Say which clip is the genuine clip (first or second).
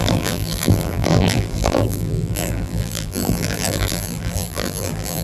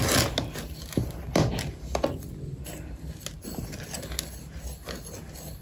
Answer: second